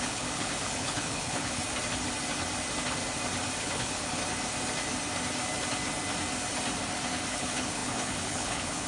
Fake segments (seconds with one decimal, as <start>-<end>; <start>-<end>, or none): 0.0-1.6; 3.6-4.2; 7.3-8.9